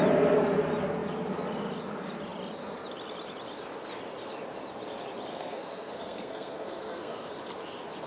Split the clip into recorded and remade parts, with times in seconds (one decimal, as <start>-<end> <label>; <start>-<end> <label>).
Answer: 0.0-5.3 recorded; 5.3-7.3 remade; 7.3-8.1 recorded